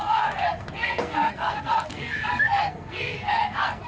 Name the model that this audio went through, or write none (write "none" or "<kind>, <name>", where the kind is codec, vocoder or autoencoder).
codec, SNAC